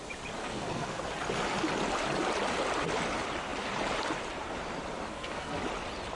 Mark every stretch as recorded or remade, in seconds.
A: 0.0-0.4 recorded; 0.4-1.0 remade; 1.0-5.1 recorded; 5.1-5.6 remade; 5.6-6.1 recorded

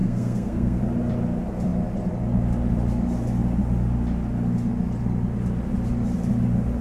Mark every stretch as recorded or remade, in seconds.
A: 0.0-0.8 remade; 0.8-6.8 recorded

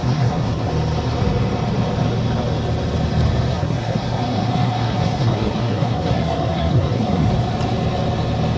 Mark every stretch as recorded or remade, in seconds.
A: 0.0-0.7 remade; 0.7-3.5 recorded; 3.5-7.3 remade; 7.3-8.6 recorded

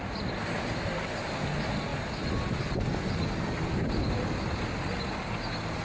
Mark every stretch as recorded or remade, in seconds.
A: 0.0-5.8 recorded